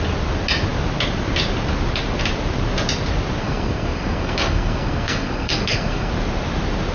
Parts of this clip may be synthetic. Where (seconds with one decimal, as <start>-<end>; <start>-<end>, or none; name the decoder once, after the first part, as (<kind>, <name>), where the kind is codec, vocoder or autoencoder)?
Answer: 3.4-6.1 (codec, SNAC)